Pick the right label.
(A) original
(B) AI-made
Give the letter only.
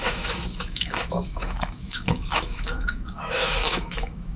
B